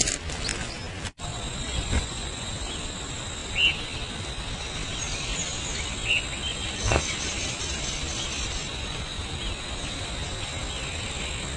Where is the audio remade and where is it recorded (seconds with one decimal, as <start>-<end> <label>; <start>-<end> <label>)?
0.0-1.3 recorded; 1.3-2.5 remade; 2.5-8.6 recorded; 8.6-9.2 remade; 9.2-11.6 recorded

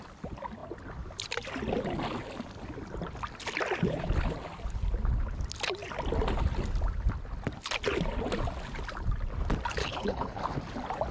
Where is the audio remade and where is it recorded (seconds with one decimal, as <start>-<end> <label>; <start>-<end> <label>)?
0.0-9.8 recorded; 9.8-10.4 remade; 10.4-11.1 recorded

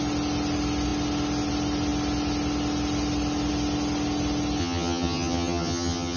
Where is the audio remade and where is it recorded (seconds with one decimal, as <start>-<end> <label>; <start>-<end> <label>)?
0.0-4.6 recorded; 4.6-6.2 remade

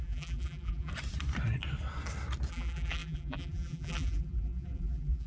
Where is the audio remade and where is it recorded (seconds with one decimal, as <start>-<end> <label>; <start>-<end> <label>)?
0.0-0.9 remade; 0.9-2.5 recorded; 2.5-5.3 remade

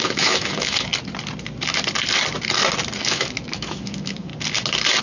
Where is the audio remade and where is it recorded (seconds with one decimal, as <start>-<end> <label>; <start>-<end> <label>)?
0.0-0.9 remade; 0.9-3.0 recorded; 3.0-4.3 remade; 4.3-5.0 recorded